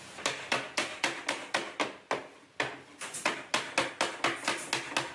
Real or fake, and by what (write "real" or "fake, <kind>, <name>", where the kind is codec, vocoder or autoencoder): real